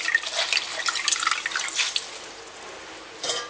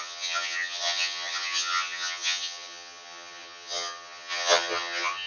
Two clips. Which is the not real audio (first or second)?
second